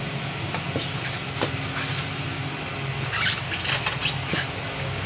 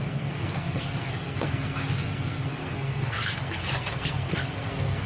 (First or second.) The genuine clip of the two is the first